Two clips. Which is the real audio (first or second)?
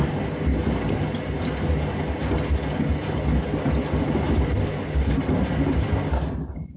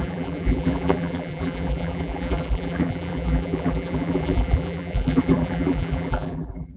first